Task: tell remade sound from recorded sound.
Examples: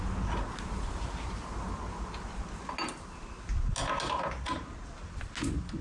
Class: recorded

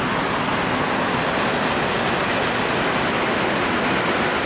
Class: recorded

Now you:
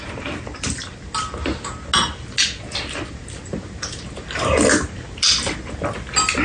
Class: recorded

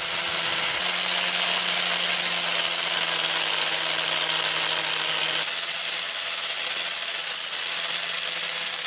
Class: recorded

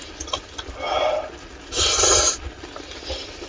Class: recorded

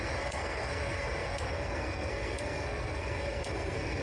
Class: remade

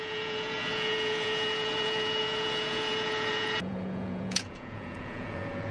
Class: remade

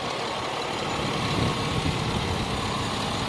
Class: recorded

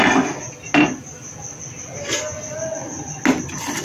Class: recorded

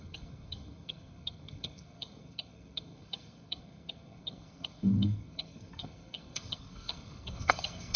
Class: remade